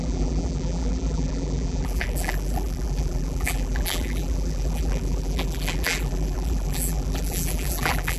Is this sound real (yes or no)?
no